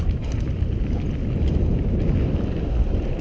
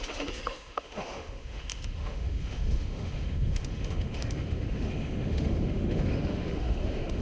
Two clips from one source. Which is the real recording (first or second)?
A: first